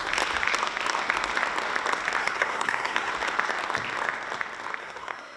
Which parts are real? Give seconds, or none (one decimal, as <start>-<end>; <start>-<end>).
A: 0.0-2.2; 3.1-4.8